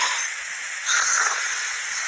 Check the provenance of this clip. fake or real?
fake